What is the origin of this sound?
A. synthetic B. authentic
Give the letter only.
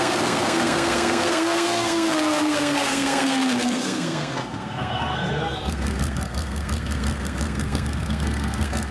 A